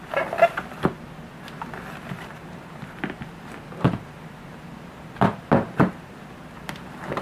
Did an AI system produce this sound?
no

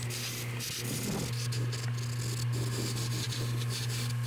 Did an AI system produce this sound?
no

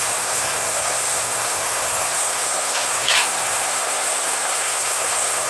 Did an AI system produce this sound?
yes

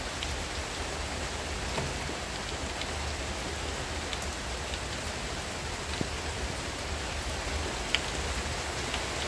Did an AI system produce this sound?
no